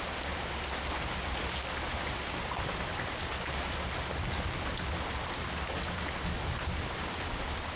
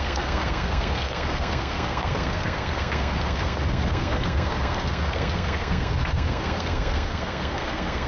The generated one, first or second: second